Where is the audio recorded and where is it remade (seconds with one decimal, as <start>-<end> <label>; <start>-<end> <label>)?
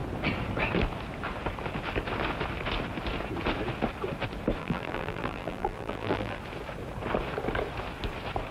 0.0-4.6 recorded; 4.6-6.4 remade; 6.4-8.5 recorded